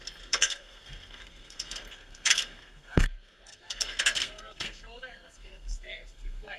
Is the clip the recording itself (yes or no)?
no